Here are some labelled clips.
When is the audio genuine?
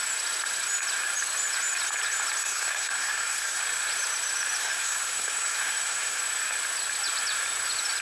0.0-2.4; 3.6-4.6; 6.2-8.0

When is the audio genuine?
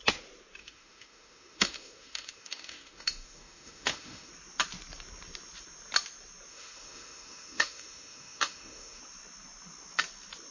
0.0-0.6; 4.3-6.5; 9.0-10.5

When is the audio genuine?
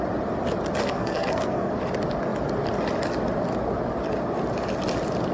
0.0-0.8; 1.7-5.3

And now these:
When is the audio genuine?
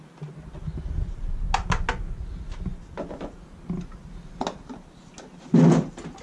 0.0-6.2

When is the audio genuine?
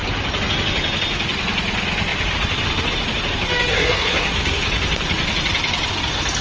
0.0-3.7; 4.6-6.4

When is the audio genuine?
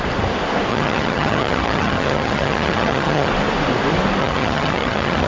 0.0-0.7; 3.3-4.2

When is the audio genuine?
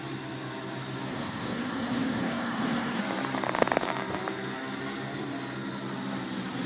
0.0-1.1; 3.0-6.7